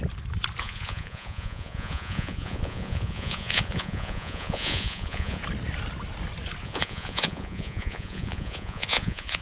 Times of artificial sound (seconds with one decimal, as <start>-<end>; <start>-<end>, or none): 0.6-5.4; 6.6-9.4

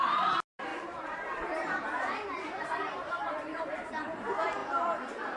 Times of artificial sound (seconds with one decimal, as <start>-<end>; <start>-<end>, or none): 0.7-3.9; 4.6-5.4

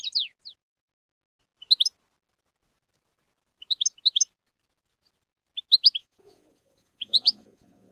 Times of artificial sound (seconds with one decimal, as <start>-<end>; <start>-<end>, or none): 6.0-7.9